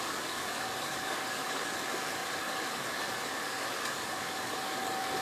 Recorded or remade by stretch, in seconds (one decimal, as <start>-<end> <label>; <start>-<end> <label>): 0.0-5.2 remade